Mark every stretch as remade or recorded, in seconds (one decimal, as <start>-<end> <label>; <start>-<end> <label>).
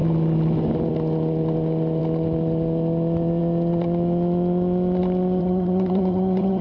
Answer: 0.0-5.4 recorded; 5.4-6.6 remade